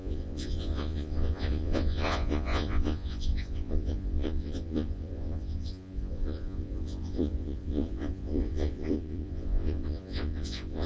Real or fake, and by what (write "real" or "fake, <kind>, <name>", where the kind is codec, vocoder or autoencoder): fake, vocoder, Vocos